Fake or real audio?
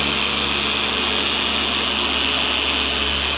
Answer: real